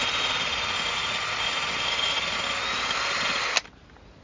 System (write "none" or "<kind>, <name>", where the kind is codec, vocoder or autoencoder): none